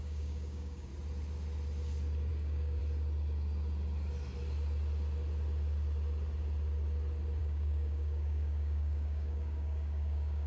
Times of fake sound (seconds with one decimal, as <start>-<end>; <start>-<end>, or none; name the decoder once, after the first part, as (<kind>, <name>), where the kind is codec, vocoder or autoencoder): 0.0-0.9 (codec, DAC); 2.3-2.8; 7.4-10.5

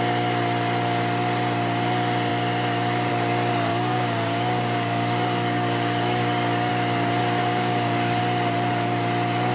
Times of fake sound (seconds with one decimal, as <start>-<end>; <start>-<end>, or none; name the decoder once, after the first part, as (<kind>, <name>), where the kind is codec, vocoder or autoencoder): 3.7-6.7 (codec, DAC); 7.4-8.2

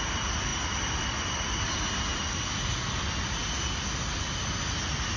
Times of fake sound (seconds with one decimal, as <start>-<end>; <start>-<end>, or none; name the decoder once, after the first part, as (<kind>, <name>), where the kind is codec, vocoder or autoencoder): none

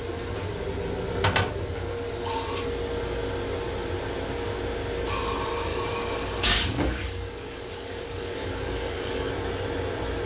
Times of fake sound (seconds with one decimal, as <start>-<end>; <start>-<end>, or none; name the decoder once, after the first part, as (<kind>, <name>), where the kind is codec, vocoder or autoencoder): 5.7-9.3 (codec, DAC)

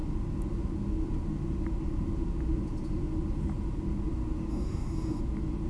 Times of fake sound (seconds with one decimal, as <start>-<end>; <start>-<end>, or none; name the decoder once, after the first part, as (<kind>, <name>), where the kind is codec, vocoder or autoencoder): 4.5-5.2 (codec, DAC)

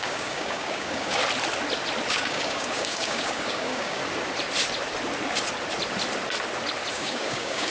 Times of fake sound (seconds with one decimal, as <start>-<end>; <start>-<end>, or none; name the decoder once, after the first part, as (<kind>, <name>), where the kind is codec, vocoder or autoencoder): 0.0-1.2 (codec, DAC); 2.1-4.0; 6.9-7.7